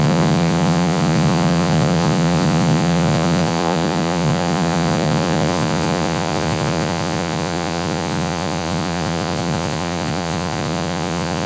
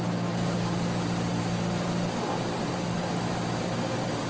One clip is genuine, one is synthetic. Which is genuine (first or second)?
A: second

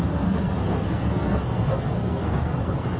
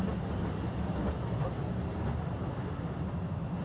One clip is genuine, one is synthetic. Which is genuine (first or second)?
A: second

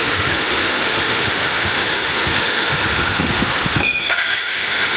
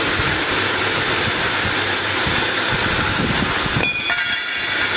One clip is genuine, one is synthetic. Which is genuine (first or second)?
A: second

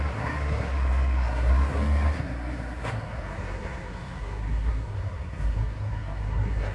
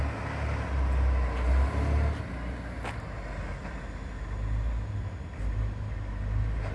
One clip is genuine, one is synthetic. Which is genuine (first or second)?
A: second